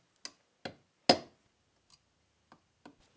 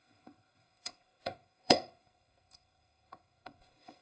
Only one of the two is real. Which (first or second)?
first